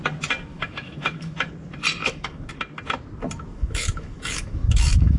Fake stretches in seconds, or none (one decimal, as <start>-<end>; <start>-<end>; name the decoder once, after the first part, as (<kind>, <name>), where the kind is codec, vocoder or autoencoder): 0.5-1.5 (autoencoder, DAC-VAE); 2.0-2.5; 3.5-5.2

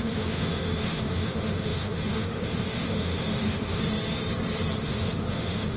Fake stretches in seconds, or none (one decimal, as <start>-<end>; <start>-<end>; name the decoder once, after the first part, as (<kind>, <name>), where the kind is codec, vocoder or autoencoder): 0.0-3.8 (autoencoder, DAC-VAE); 4.8-5.8